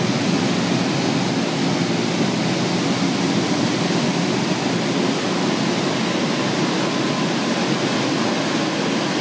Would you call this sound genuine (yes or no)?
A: yes